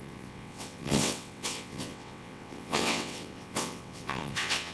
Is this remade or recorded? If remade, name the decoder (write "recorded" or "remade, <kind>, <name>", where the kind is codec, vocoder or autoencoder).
remade, vocoder, WaveNeXt